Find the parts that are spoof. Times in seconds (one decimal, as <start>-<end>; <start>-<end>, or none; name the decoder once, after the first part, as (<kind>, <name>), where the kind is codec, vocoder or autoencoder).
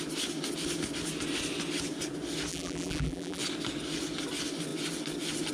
2.5-3.4 (vocoder, BigVGAN v2)